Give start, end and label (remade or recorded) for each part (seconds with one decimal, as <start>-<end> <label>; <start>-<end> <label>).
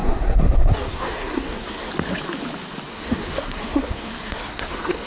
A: 0.0-1.9 remade; 1.9-2.9 recorded; 2.9-5.1 remade